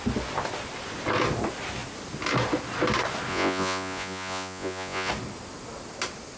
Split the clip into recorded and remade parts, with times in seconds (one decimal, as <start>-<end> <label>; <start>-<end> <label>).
0.0-3.3 recorded; 3.3-5.1 remade; 5.1-6.4 recorded